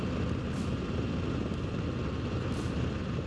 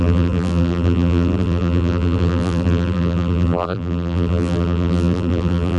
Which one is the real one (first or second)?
first